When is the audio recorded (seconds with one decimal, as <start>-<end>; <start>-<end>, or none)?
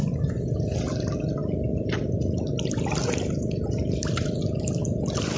0.0-5.4